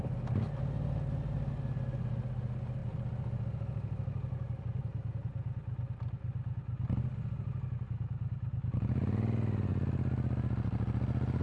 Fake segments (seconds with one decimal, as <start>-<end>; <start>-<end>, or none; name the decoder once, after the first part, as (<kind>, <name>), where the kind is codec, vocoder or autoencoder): none